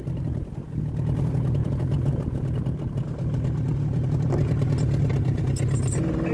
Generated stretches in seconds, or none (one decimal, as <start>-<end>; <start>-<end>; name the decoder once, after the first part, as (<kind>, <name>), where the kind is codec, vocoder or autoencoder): none